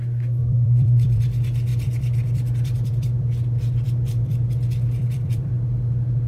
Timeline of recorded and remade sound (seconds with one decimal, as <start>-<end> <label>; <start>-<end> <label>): 0.0-0.4 recorded; 0.4-1.2 remade; 1.2-1.7 recorded; 1.7-5.5 remade; 5.5-6.3 recorded